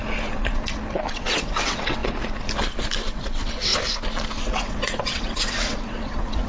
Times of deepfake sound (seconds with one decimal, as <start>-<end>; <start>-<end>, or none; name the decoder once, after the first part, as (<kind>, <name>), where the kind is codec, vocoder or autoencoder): 1.1-2.0 (vocoder, WaveNeXt); 3.1-3.7; 4.4-6.5